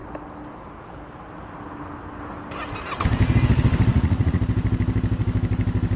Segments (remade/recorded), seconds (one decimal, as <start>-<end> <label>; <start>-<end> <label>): 0.0-3.9 recorded; 3.9-4.4 remade; 4.4-6.0 recorded